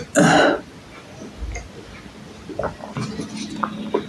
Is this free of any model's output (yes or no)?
yes